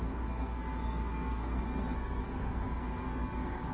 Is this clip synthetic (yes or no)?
yes